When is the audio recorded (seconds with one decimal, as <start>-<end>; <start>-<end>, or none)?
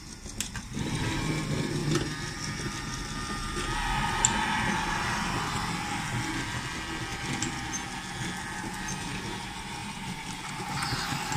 0.0-11.4